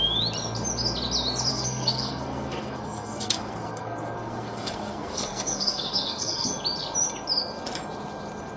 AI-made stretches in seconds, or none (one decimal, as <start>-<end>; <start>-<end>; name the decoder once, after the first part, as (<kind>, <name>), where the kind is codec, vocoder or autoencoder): 1.5-6.5 (codec, SNAC)